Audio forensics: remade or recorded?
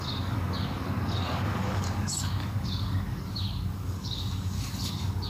remade